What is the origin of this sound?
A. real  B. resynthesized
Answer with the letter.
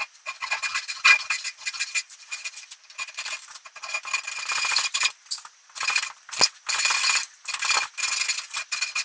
A